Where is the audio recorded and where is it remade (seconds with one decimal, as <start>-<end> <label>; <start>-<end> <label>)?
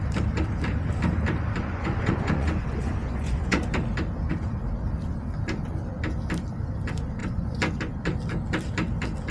0.0-1.6 recorded; 1.6-3.6 remade; 3.6-7.2 recorded; 7.2-7.7 remade; 7.7-9.3 recorded